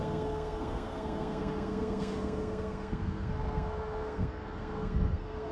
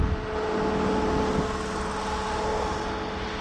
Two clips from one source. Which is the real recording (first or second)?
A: second